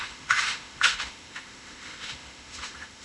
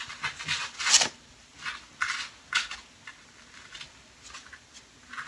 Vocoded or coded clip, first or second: first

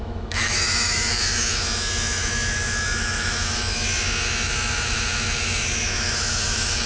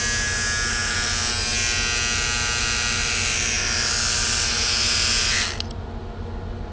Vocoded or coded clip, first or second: first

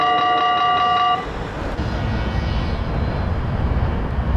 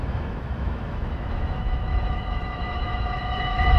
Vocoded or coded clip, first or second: second